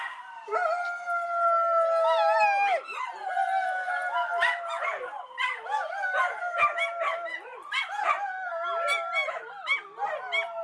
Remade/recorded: recorded